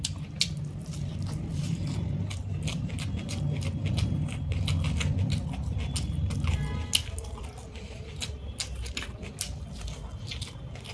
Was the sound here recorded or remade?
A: recorded